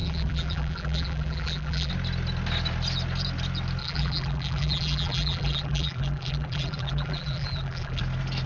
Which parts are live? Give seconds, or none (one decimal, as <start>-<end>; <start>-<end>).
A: 1.9-3.8; 8.0-8.5